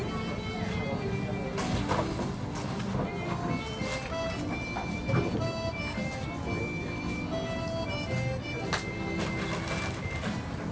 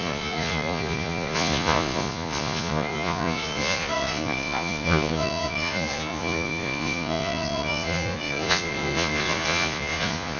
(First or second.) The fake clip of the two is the second